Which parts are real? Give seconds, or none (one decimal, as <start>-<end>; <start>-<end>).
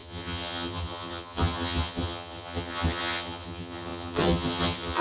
none